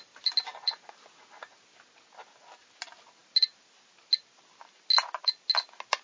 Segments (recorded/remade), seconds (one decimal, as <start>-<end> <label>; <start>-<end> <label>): 0.0-6.0 recorded